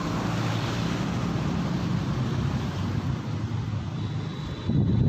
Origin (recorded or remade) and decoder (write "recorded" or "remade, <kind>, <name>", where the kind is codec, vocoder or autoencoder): recorded